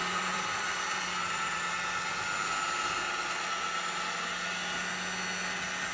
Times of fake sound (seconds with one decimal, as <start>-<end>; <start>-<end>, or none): 0.0-1.7